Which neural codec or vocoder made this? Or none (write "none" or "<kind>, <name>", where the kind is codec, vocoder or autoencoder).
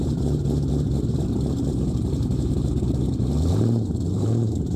vocoder, BigVGAN v2